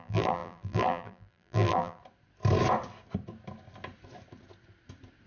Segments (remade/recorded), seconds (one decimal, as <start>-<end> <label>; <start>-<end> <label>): 0.0-2.0 remade; 2.0-5.3 recorded